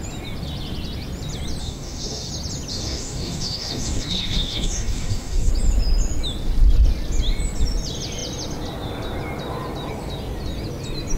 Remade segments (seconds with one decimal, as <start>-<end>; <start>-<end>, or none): 1.6-2.3; 2.7-5.5